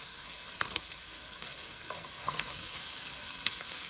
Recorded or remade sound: remade